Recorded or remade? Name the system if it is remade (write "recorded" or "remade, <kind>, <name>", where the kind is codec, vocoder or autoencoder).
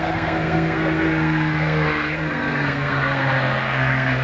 remade, codec, SNAC